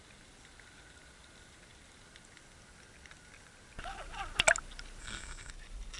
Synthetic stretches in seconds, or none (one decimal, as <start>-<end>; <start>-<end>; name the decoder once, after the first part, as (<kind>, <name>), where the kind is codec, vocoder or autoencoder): 5.0-5.5 (codec, SNAC)